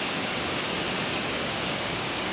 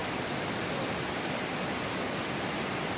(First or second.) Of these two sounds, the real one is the second